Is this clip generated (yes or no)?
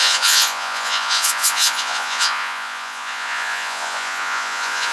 yes